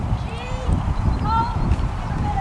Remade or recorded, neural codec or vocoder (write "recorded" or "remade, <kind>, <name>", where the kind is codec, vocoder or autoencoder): remade, vocoder, BigVGAN v2